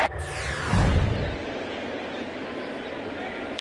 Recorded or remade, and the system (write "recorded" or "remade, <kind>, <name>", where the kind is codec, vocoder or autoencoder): recorded